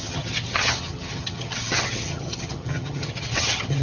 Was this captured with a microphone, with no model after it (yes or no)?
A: no